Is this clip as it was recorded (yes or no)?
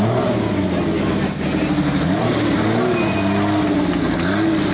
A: yes